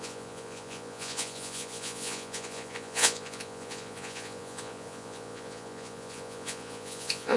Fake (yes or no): yes